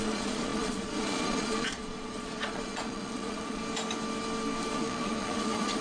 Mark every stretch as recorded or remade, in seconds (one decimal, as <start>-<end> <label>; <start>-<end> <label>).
0.0-3.6 remade; 3.6-4.7 recorded; 4.7-5.8 remade